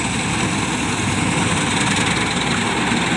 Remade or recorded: recorded